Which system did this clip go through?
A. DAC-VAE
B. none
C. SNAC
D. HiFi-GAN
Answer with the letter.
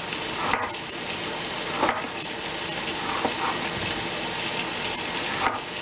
B